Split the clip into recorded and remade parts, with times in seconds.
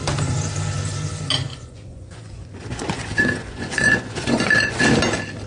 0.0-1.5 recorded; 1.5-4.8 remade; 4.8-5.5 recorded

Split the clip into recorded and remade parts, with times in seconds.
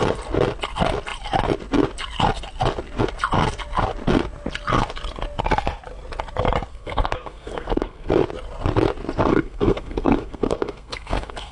0.0-6.7 recorded; 6.7-8.1 remade; 8.1-9.3 recorded; 9.3-11.5 remade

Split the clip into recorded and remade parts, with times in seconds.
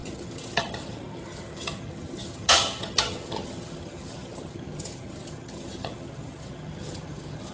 0.0-7.5 remade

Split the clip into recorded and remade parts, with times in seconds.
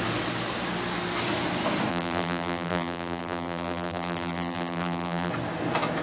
0.0-1.9 recorded; 1.9-5.3 remade; 5.3-6.0 recorded